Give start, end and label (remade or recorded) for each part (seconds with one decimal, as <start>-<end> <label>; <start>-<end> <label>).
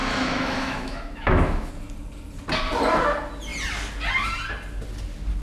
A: 0.0-1.7 remade; 1.7-5.4 recorded